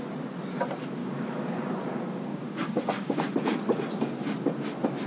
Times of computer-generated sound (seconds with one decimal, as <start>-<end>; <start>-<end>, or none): 1.0-1.6; 2.3-3.3